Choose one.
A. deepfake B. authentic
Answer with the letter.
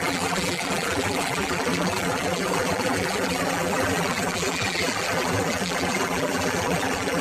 A